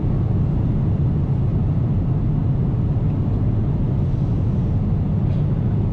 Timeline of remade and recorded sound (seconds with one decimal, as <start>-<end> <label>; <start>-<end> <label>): 0.0-1.5 recorded; 1.5-2.0 remade; 2.0-5.9 recorded